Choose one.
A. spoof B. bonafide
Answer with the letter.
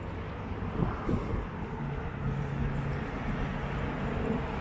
B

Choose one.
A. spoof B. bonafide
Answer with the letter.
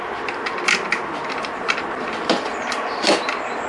B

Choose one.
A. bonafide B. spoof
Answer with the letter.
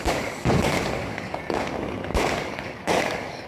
B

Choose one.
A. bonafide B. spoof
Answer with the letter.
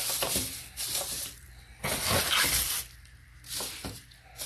A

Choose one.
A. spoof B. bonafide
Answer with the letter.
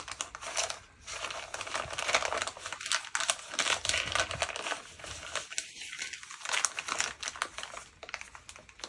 B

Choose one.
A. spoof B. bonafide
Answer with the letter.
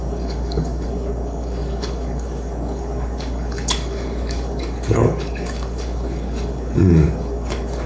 A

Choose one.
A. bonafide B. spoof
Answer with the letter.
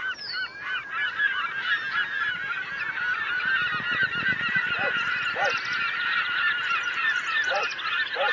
A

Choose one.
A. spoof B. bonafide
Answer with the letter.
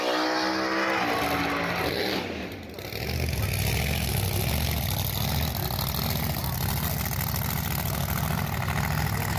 B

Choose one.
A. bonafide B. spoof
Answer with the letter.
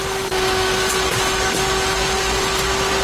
A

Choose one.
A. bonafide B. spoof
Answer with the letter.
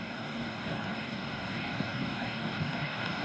B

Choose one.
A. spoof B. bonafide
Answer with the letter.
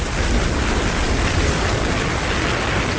B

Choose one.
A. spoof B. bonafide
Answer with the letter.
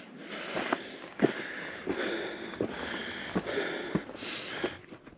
B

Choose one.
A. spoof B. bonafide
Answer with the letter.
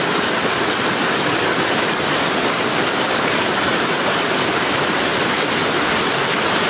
B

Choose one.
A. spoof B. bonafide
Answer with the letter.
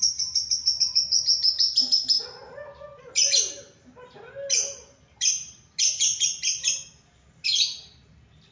B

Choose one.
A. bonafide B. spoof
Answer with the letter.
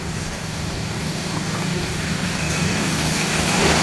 B